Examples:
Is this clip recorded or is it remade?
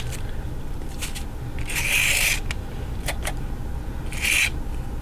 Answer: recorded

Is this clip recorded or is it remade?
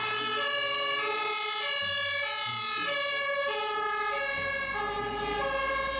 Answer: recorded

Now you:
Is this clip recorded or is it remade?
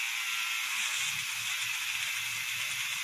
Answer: recorded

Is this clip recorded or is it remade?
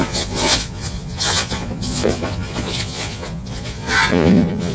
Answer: remade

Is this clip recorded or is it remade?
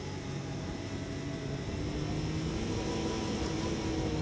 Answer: recorded